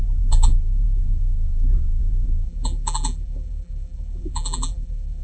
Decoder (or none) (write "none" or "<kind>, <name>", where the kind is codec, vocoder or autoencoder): vocoder, BigVGAN v2